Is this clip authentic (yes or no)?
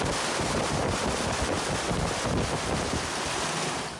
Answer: yes